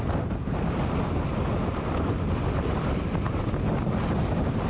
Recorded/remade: recorded